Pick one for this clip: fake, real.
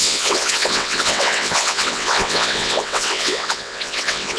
fake